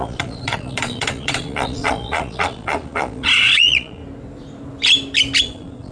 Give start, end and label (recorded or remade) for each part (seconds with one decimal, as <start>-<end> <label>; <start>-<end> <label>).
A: 0.0-4.0 remade; 4.0-5.4 recorded; 5.4-5.9 remade